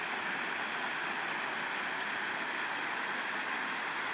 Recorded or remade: recorded